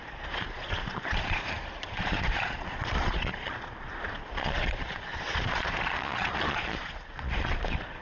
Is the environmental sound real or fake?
fake